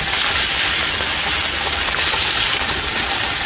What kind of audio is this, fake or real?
real